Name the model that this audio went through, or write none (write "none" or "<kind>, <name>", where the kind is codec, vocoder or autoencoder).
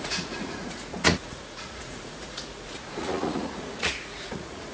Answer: vocoder, Vocos